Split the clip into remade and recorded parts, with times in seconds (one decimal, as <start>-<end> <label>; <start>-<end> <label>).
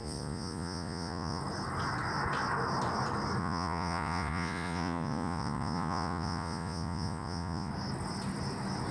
0.0-1.4 remade; 1.4-3.4 recorded; 3.4-7.7 remade; 7.7-8.9 recorded